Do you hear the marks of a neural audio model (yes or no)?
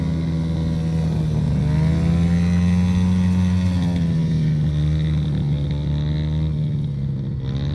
no